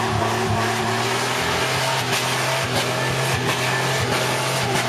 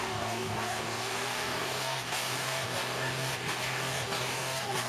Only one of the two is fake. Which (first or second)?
second